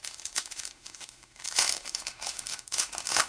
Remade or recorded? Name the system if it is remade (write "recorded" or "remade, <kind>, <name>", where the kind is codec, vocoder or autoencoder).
remade, autoencoder, DAC-VAE